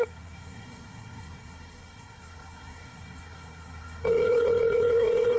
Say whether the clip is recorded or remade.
remade